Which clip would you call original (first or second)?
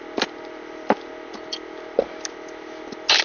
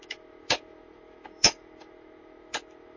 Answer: first